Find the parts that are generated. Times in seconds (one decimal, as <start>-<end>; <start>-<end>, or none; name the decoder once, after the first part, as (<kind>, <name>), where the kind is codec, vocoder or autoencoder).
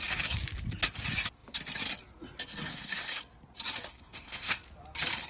2.7-3.2 (codec, SNAC); 3.9-4.6